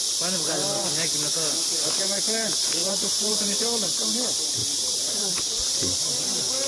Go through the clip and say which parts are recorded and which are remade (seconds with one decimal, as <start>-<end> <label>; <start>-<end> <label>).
0.0-2.8 recorded; 2.8-3.6 remade; 3.6-4.6 recorded; 4.6-5.4 remade; 5.4-6.7 recorded